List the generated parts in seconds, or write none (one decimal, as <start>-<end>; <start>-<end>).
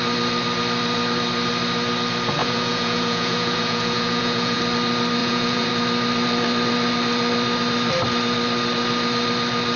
2.4-4.6; 5.2-5.7